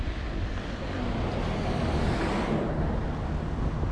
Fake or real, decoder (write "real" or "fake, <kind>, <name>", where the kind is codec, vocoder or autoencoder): real